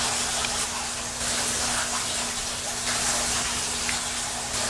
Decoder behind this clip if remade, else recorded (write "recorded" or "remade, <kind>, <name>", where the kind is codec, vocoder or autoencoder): recorded